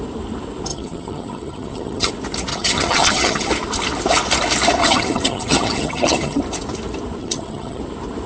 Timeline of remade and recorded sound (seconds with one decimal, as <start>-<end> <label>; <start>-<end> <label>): 0.0-0.7 recorded; 0.7-2.1 remade; 2.1-2.5 recorded; 2.5-3.5 remade; 3.5-4.8 recorded; 4.8-6.4 remade; 6.4-7.2 recorded; 7.2-7.8 remade; 7.8-8.3 recorded